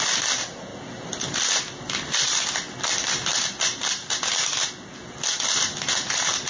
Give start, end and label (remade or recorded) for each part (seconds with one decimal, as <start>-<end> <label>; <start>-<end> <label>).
0.0-6.5 recorded